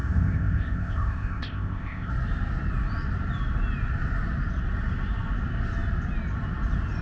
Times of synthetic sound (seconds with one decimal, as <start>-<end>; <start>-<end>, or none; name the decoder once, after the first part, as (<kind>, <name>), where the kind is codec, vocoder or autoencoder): 0.0-2.1 (codec, ZipCodec)